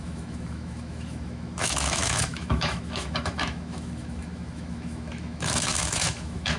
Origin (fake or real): fake